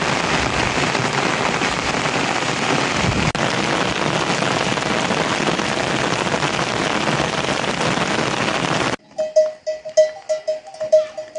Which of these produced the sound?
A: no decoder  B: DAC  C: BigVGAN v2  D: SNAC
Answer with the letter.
A